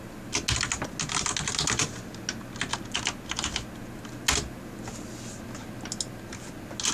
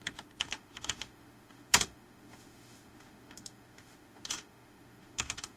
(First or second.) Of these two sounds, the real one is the first